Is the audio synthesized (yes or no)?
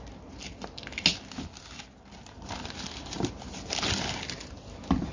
no